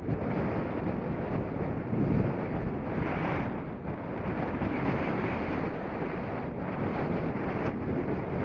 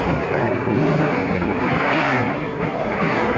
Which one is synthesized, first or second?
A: second